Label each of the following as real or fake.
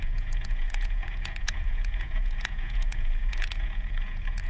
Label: fake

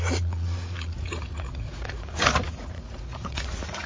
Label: fake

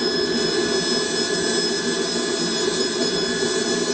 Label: real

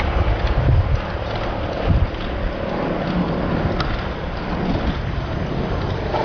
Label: real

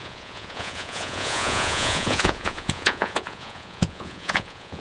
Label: fake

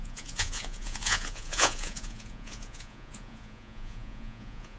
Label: fake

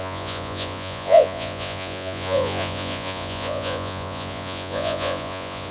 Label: fake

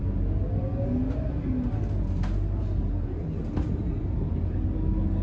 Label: real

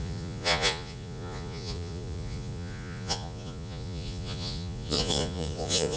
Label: fake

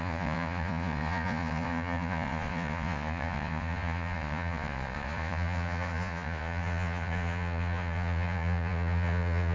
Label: fake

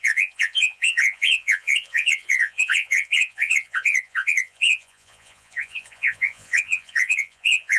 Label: fake